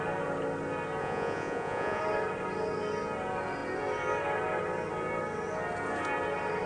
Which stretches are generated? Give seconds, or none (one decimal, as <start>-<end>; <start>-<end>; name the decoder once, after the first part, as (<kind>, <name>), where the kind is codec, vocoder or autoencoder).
1.0-2.0 (vocoder, Vocos)